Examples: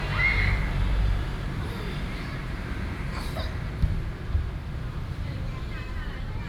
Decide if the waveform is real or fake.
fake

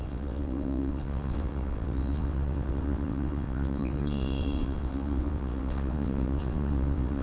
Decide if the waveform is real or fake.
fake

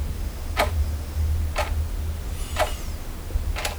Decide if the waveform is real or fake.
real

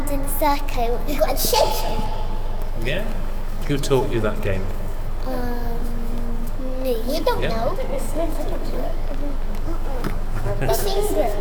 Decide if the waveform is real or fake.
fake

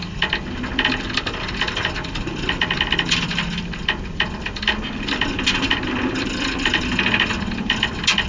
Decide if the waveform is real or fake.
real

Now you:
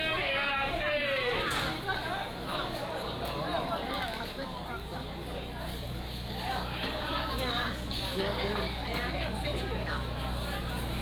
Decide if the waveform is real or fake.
fake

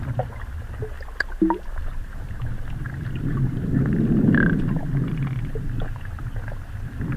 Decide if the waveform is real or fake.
real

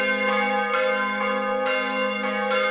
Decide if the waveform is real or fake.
real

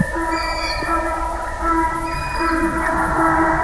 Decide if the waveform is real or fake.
real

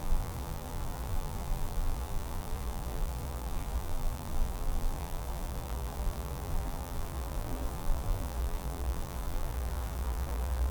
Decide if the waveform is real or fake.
fake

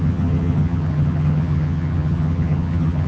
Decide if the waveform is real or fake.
fake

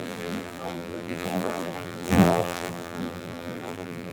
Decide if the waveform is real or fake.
fake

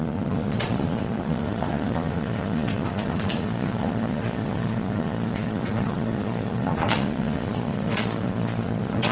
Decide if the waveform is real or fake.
fake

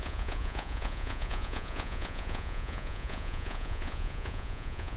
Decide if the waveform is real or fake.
fake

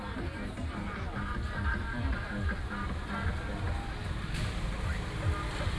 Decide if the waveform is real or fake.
real